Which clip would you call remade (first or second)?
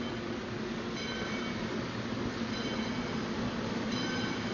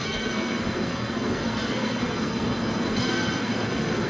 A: second